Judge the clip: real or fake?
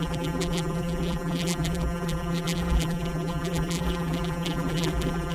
fake